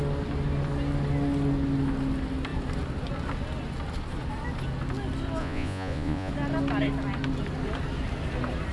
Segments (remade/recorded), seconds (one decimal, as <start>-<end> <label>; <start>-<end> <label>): 0.0-5.4 recorded; 5.4-6.3 remade; 6.3-8.7 recorded